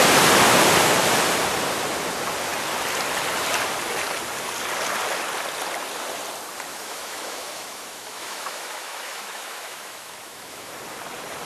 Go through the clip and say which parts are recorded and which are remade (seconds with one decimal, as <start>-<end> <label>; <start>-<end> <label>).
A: 0.0-6.7 recorded; 6.7-10.7 remade; 10.7-11.5 recorded